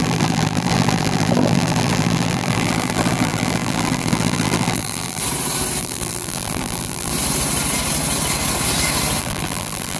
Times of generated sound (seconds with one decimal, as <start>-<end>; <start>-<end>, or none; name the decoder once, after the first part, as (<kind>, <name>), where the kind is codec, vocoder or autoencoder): 0.0-5.2 (vocoder, BigVGAN v2); 5.8-7.1; 9.2-10.0